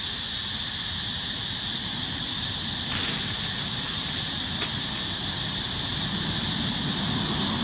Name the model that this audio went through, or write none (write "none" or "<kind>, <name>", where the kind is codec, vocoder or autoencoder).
none